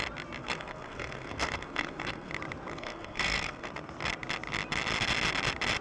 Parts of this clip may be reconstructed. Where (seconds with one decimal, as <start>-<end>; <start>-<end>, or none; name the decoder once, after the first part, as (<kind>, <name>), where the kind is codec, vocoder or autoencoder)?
0.4-2.3 (codec, SNAC); 2.7-3.7